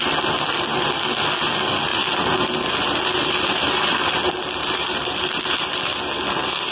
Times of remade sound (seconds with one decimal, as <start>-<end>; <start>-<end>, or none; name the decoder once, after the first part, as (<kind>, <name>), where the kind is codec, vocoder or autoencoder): 1.9-4.1 (vocoder, BigVGAN v2); 4.6-5.9